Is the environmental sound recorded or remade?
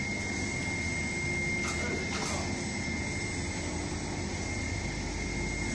recorded